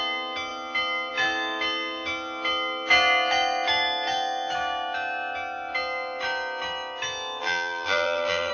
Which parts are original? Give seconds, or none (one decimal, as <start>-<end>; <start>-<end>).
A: 0.0-7.4